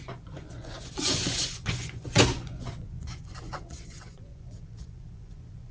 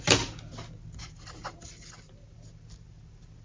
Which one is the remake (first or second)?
first